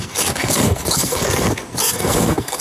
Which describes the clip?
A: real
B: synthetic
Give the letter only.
B